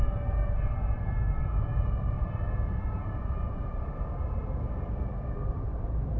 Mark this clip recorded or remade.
remade